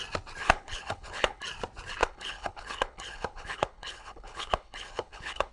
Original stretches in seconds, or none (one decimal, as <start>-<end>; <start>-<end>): 0.0-0.4; 1.4-2.0